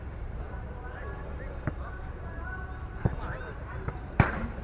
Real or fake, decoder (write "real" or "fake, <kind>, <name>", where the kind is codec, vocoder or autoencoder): fake, vocoder, BigVGAN v2